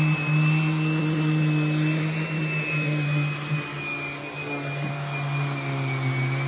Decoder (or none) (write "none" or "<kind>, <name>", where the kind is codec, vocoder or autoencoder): none